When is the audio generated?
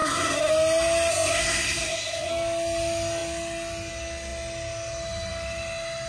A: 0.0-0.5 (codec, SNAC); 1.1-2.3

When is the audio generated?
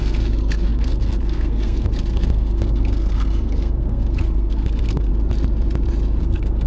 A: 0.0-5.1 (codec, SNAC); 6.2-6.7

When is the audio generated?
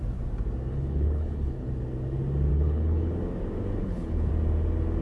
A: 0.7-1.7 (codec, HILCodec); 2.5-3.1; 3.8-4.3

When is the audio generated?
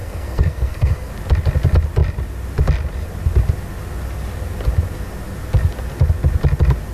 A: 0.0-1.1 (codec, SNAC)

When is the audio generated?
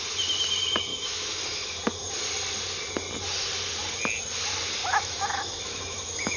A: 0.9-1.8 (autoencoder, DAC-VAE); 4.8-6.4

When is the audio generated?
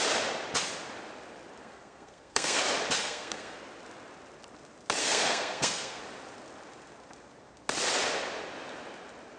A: 1.6-2.6 (codec, SNAC); 3.0-3.6; 5.0-6.0